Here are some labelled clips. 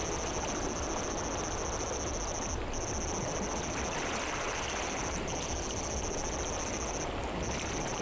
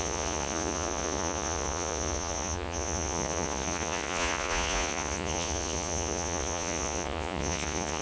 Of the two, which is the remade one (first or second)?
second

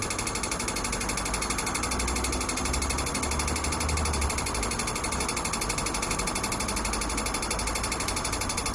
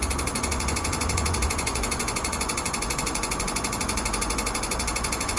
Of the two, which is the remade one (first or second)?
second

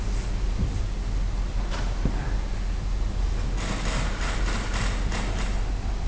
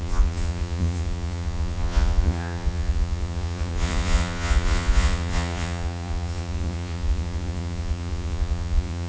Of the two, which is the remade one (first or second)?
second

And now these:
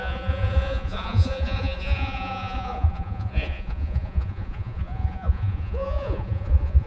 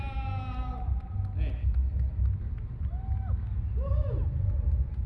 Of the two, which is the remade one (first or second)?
first